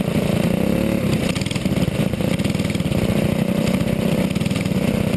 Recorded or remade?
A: recorded